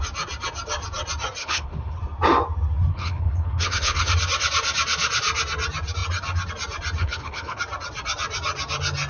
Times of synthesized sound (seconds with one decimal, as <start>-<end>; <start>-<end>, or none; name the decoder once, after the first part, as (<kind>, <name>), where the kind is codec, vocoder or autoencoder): 1.4-2.0 (codec, HILCodec); 2.9-4.1; 7.0-7.6